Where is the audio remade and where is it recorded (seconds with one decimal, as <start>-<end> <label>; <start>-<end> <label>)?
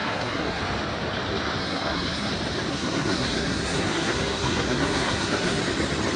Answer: 0.0-0.6 remade; 0.6-1.6 recorded; 1.6-2.3 remade; 2.3-2.7 recorded; 2.7-5.6 remade; 5.6-6.2 recorded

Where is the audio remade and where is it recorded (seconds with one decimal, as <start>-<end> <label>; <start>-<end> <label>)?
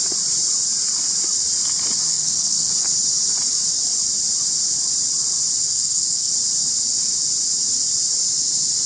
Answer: 0.0-2.1 recorded; 2.1-2.7 remade; 2.7-5.7 recorded; 5.7-6.3 remade; 6.3-8.9 recorded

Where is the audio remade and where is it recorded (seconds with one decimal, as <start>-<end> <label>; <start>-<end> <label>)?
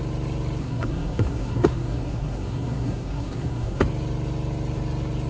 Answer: 0.0-0.6 recorded; 0.6-3.8 remade; 3.8-5.3 recorded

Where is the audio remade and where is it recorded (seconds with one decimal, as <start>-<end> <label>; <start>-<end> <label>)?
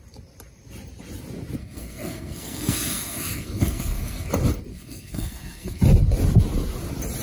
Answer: 0.0-1.6 recorded; 1.6-4.3 remade; 4.3-4.7 recorded; 4.7-5.8 remade; 5.8-7.2 recorded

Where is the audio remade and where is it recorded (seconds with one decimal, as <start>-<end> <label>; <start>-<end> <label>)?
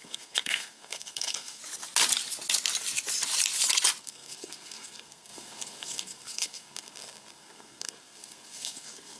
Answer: 0.0-1.6 remade; 1.6-4.0 recorded; 4.0-9.2 remade